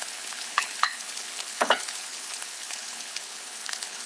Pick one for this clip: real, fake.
fake